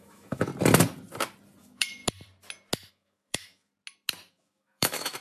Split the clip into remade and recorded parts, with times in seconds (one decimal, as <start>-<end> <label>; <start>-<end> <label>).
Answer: 0.0-0.5 remade; 0.5-1.6 recorded; 1.6-2.0 remade; 2.0-2.9 recorded; 2.9-3.7 remade; 3.7-4.3 recorded; 4.3-5.2 remade